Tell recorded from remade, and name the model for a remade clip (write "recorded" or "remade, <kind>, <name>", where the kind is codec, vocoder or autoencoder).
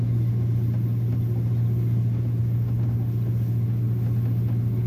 recorded